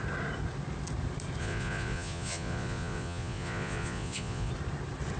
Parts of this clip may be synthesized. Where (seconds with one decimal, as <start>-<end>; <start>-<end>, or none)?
1.4-4.5